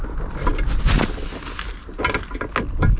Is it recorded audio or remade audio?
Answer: recorded